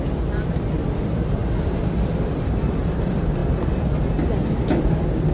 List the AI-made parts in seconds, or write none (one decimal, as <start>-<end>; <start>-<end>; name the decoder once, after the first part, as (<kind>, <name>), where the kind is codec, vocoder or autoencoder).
none